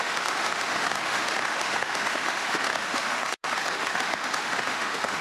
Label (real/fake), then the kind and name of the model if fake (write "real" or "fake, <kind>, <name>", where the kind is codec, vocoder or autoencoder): fake, autoencoder, DAC-VAE